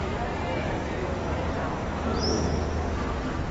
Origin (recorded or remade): recorded